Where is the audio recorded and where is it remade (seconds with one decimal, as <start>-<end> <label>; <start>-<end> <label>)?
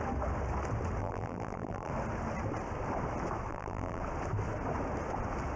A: 0.0-1.0 recorded; 1.0-1.9 remade; 1.9-3.5 recorded; 3.5-4.0 remade; 4.0-5.6 recorded